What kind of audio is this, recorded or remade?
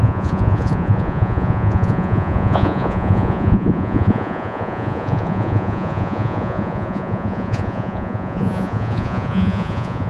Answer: remade